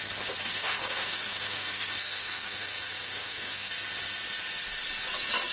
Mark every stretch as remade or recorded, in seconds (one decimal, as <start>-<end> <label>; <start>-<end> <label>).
0.0-0.4 recorded; 0.4-3.7 remade; 3.7-5.5 recorded